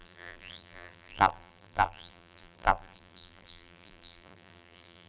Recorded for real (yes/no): no